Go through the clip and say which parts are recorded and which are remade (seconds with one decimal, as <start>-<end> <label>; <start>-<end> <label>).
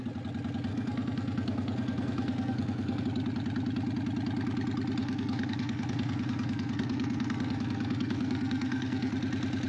0.0-0.7 recorded; 0.7-3.0 remade; 3.0-5.0 recorded; 5.0-9.1 remade; 9.1-9.7 recorded